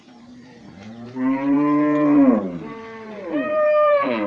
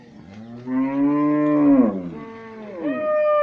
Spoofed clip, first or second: first